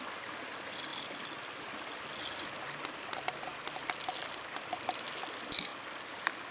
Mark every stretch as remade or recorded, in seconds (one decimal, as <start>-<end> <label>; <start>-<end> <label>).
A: 0.0-6.5 recorded